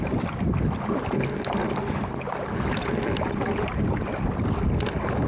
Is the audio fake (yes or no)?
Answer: no